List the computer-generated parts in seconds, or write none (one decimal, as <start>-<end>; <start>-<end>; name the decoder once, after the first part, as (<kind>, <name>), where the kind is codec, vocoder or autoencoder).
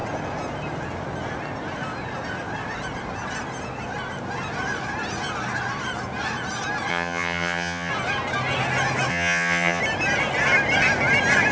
6.9-7.9 (vocoder, HiFi-GAN); 9.1-9.8